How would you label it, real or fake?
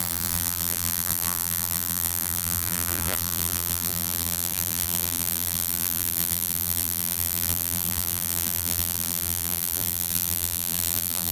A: fake